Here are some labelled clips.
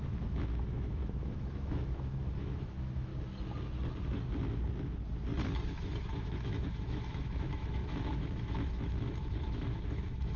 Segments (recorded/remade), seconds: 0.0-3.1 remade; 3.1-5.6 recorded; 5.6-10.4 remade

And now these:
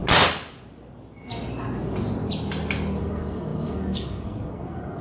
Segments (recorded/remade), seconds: 0.0-3.0 recorded; 3.0-5.0 remade

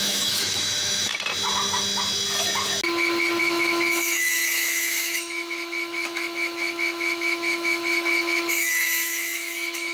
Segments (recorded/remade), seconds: 0.0-1.1 remade; 1.1-3.4 recorded; 3.4-9.9 remade